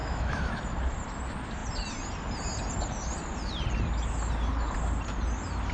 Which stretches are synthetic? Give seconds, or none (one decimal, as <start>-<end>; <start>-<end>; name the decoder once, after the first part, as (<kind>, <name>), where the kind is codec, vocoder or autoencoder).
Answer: 0.0-0.6 (autoencoder, DAC-VAE)